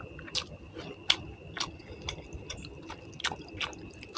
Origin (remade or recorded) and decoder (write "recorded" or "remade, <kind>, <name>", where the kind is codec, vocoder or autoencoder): recorded